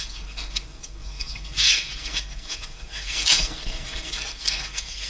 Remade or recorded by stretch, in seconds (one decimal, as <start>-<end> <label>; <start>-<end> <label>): 0.0-5.1 remade